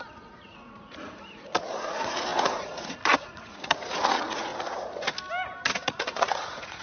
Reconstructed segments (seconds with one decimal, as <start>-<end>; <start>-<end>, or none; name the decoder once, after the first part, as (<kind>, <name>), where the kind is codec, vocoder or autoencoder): 0.0-4.5 (vocoder, Vocos); 5.7-6.8

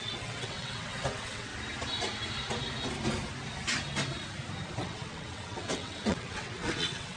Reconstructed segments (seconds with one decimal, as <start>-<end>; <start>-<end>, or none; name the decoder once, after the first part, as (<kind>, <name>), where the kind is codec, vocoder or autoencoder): 0.0-1.5 (vocoder, WaveNeXt); 4.8-7.2

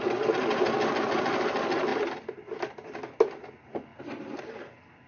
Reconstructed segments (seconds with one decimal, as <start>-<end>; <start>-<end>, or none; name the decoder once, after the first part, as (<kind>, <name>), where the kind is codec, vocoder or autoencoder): none

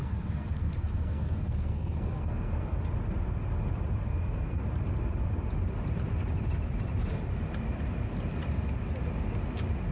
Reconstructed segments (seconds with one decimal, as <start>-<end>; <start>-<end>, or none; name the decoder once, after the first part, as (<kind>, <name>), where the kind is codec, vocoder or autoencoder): 0.0-2.8 (codec, SNAC); 4.1-4.6

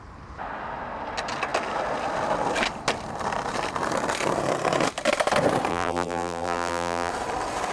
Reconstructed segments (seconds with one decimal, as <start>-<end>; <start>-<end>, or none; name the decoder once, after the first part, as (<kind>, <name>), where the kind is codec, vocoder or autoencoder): 5.7-7.1 (vocoder, BigVGAN v2)

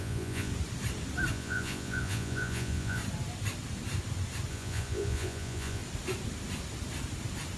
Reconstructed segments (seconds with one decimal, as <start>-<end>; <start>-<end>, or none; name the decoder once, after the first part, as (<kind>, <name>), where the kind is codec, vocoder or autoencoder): 0.0-0.5 (vocoder, Vocos); 1.3-3.0; 4.5-5.8